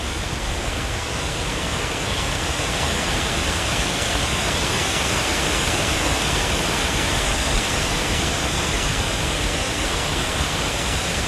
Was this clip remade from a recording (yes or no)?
yes